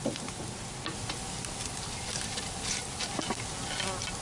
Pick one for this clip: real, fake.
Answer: real